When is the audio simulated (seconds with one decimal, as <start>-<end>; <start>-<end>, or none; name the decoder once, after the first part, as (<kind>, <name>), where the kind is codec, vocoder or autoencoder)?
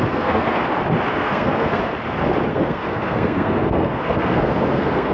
0.0-0.6 (codec, SNAC); 1.1-1.8; 2.5-5.1